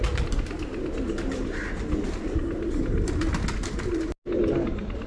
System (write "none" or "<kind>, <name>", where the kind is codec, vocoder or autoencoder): none